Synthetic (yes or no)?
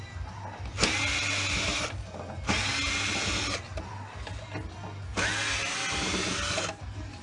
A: no